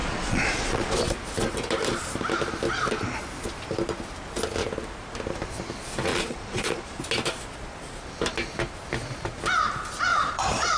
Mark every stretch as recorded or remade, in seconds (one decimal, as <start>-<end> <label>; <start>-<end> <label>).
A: 0.0-1.0 remade; 1.0-6.1 recorded; 6.1-7.0 remade; 7.0-10.1 recorded; 10.1-10.8 remade